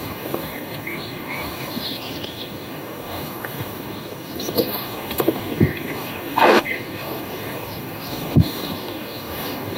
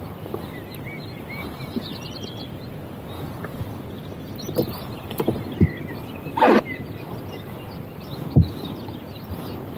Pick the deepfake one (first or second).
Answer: first